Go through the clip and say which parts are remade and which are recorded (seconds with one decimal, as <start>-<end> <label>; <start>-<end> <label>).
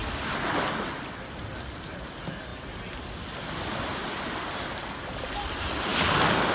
0.0-6.5 recorded